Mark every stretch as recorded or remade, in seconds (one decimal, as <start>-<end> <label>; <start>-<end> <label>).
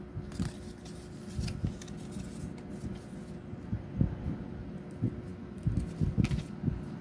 0.0-7.0 recorded